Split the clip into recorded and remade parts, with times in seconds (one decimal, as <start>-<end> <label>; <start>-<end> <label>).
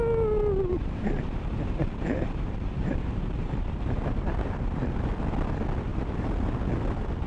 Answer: 0.0-0.7 recorded; 0.7-5.1 remade; 5.1-5.9 recorded; 5.9-6.6 remade; 6.6-7.3 recorded